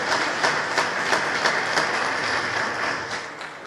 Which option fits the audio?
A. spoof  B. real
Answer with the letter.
B